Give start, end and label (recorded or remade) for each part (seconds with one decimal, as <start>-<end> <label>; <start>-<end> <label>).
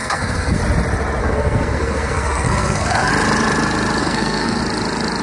0.0-0.6 remade; 0.6-1.2 recorded; 1.2-3.1 remade; 3.1-4.0 recorded; 4.0-4.6 remade; 4.6-5.2 recorded